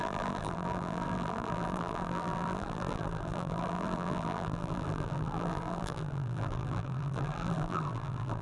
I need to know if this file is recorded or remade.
remade